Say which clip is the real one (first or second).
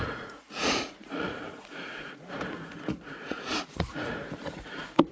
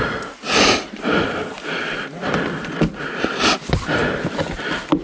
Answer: second